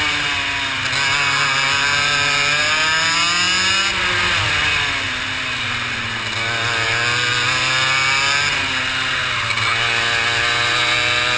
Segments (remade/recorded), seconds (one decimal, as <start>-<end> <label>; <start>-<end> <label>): 0.0-11.4 recorded

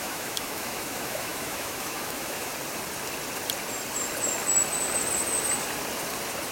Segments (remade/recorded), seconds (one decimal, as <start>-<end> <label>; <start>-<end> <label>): 0.0-2.5 remade; 2.5-6.5 recorded

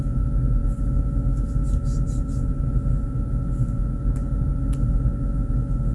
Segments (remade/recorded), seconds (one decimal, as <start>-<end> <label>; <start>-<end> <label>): 0.0-5.9 recorded

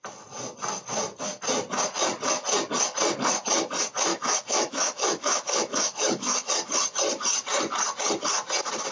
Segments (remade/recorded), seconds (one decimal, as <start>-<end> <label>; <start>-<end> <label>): 0.0-4.1 recorded; 4.1-6.5 remade; 6.5-8.9 recorded

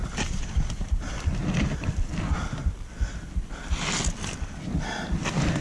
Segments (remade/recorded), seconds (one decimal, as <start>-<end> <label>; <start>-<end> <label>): 0.0-2.2 remade; 2.2-5.6 recorded